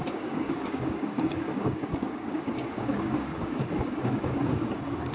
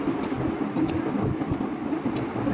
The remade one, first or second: first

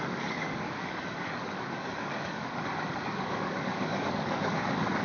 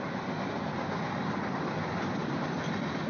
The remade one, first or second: first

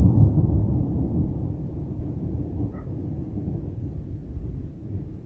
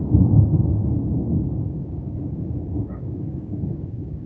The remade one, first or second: second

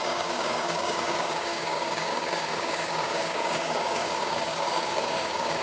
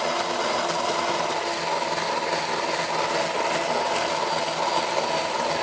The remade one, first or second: first